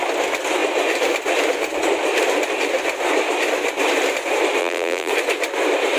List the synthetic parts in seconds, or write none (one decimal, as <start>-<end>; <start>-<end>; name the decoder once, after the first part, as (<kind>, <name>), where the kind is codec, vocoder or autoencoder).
4.6-5.1 (vocoder, BigVGAN v2)